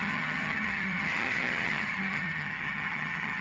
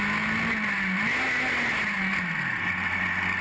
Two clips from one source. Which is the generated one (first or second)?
first